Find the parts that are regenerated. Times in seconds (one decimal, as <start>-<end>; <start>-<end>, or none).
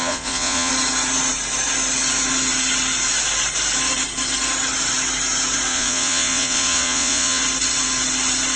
0.0-0.7; 5.7-7.4